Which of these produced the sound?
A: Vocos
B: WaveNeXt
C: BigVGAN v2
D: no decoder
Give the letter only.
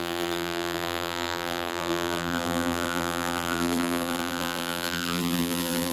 C